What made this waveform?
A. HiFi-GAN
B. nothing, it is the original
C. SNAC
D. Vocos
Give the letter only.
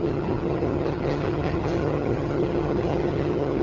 A